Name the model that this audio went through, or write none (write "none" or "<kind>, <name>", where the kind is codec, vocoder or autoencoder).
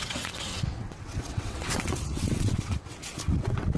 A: vocoder, WaveNeXt